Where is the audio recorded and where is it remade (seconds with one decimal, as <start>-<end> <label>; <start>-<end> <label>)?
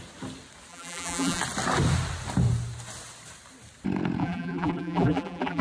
0.0-0.7 recorded; 0.7-1.4 remade; 1.4-4.2 recorded; 4.2-5.6 remade